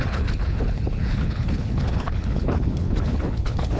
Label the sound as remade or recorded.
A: remade